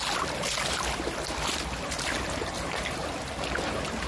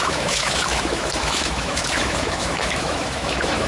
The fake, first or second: second